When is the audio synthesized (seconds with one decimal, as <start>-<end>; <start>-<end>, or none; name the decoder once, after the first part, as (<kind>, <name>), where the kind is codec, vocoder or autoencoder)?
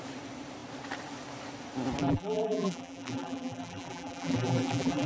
2.0-5.1 (vocoder, BigVGAN v2)